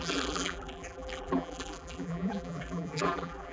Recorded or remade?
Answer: remade